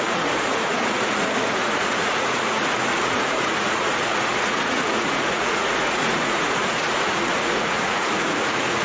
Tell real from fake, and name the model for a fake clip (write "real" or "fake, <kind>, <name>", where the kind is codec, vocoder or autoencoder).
fake, vocoder, Vocos